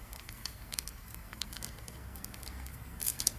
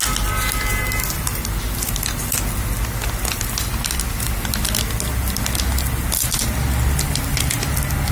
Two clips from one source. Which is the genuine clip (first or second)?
second